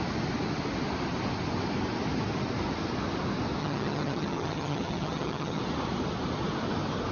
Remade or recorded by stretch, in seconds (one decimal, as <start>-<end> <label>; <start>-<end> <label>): 0.0-3.6 recorded; 3.6-5.6 remade; 5.6-7.1 recorded